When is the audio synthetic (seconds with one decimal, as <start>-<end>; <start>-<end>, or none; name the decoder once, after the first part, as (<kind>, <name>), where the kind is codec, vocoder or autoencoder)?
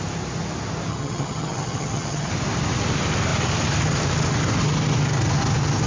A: 0.9-2.3 (vocoder, HiFi-GAN)